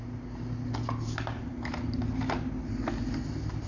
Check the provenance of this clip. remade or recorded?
recorded